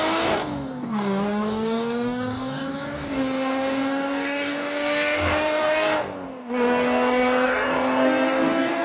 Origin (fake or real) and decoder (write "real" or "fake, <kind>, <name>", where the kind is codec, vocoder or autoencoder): fake, codec, DAC